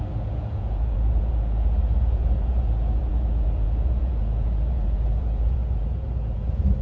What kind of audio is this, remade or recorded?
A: remade